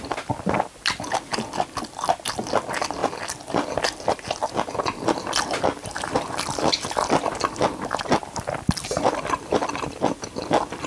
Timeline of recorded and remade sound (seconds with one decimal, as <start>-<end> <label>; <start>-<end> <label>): 0.0-10.9 recorded